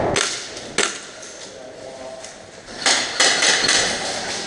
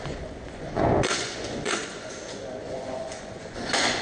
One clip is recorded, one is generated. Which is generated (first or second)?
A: second